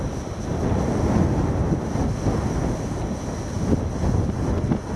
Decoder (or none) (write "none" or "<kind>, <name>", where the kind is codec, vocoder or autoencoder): none